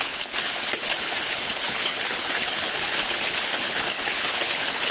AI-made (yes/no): yes